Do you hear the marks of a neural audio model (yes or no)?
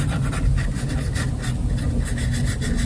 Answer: no